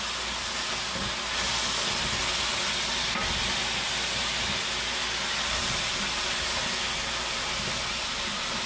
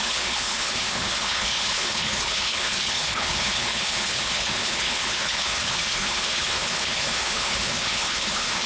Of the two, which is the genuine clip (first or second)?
first